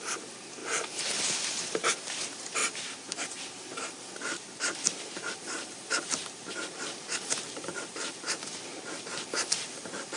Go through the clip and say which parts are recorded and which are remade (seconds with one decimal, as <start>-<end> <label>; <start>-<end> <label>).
0.0-10.2 remade

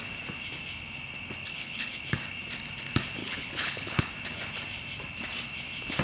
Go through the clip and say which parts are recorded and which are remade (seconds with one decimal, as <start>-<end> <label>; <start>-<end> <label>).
0.0-1.5 recorded; 1.5-2.0 remade; 2.0-3.2 recorded; 3.2-4.1 remade; 4.1-6.0 recorded

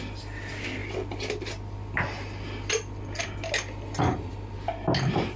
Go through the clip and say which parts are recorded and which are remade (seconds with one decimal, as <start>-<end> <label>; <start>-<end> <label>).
0.0-5.4 recorded

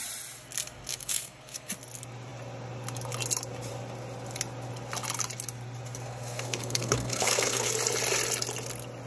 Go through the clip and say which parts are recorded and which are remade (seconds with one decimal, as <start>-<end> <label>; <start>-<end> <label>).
0.0-0.9 recorded; 0.9-1.7 remade; 1.7-6.0 recorded; 6.0-7.7 remade; 7.7-9.1 recorded

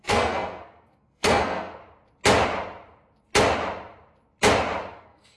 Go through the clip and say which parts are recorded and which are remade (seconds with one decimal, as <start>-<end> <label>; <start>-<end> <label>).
0.0-1.8 remade; 1.8-4.9 recorded; 4.9-5.4 remade

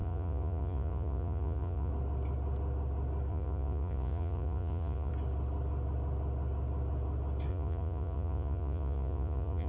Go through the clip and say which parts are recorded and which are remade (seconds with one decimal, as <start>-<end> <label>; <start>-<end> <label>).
0.0-1.9 remade; 1.9-3.3 recorded; 3.3-5.1 remade; 5.1-7.5 recorded; 7.5-9.7 remade

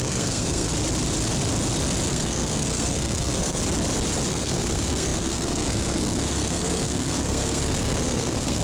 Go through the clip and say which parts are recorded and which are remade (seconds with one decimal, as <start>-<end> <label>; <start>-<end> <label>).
0.0-0.7 remade; 0.7-2.1 recorded; 2.1-3.6 remade; 3.6-4.3 recorded; 4.3-8.6 remade

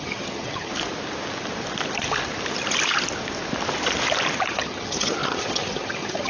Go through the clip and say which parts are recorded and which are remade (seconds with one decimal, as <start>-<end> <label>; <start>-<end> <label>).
0.0-0.7 remade; 0.7-4.5 recorded; 4.5-6.3 remade